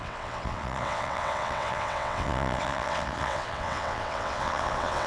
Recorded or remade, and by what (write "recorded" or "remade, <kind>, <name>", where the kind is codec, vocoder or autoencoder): remade, vocoder, WaveNeXt